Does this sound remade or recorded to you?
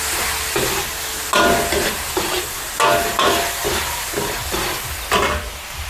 recorded